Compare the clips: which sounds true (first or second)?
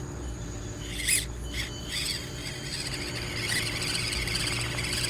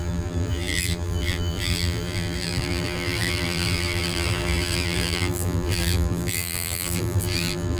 first